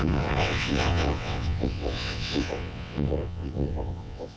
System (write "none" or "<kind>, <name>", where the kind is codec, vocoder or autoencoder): vocoder, WaveNeXt